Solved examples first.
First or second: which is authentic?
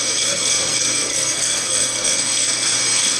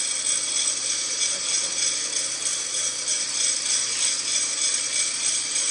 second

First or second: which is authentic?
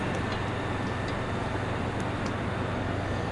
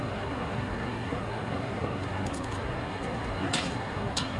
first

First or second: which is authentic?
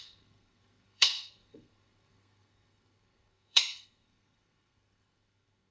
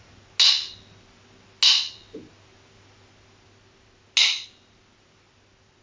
second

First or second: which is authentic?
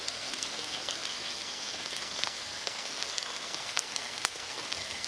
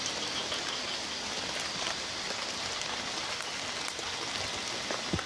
second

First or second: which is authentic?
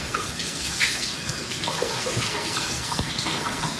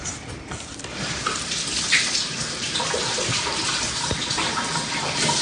second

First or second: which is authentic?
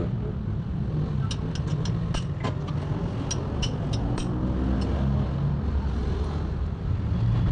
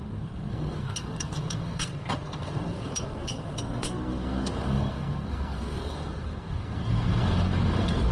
first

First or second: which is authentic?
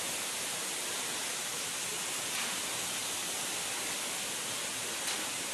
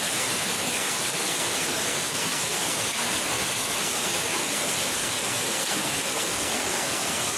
first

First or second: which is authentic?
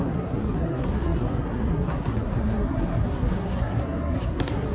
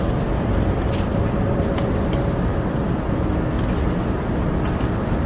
second